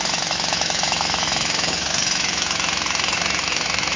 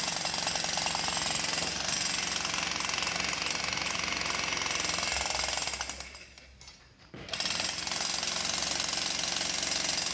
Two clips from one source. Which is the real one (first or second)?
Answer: second